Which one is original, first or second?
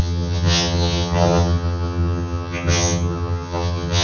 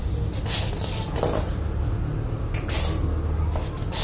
second